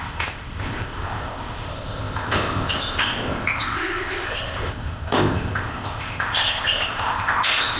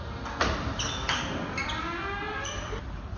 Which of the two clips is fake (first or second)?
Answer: first